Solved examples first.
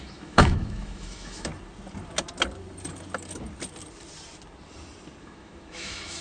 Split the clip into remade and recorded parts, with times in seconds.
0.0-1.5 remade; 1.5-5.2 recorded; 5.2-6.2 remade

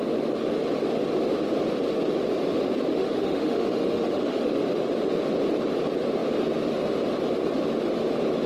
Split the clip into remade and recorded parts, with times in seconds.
0.0-2.9 recorded; 2.9-4.6 remade; 4.6-8.5 recorded

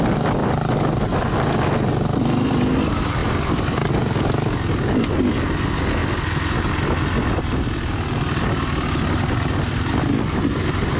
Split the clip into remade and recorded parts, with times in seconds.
0.0-11.0 recorded

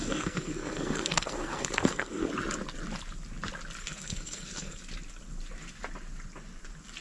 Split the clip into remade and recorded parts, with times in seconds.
0.0-2.3 remade; 2.3-3.8 recorded; 3.8-4.8 remade; 4.8-7.0 recorded